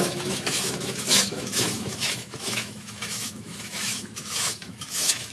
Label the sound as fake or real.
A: fake